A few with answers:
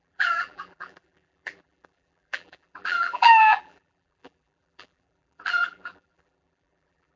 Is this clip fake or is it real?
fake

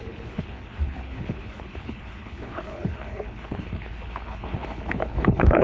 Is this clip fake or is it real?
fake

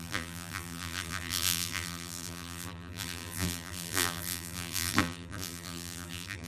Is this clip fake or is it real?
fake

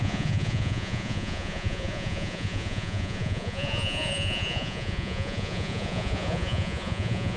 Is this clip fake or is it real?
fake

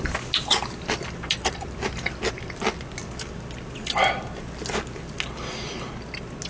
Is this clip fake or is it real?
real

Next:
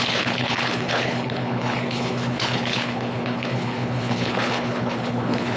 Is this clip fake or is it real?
fake